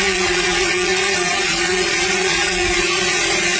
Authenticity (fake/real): fake